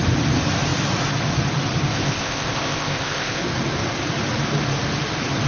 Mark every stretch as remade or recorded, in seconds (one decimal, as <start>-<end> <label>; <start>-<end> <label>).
0.0-1.9 recorded; 1.9-3.4 remade; 3.4-5.5 recorded